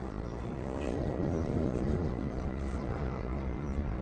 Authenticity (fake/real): fake